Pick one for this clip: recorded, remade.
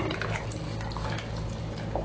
recorded